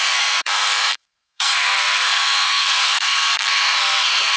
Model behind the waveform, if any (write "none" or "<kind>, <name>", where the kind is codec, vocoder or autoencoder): codec, SNAC